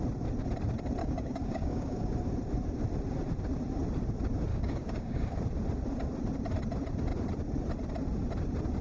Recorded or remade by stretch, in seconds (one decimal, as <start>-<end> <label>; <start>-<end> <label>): 0.0-1.0 recorded; 1.0-2.0 remade; 2.0-4.5 recorded; 4.5-5.4 remade; 5.4-8.8 recorded